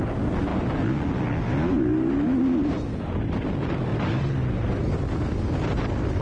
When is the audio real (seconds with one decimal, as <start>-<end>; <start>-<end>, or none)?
0.0-6.2